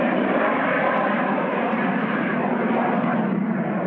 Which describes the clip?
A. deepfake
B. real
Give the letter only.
B